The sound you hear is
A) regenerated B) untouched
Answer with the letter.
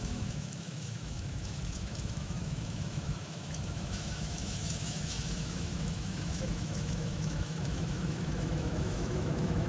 A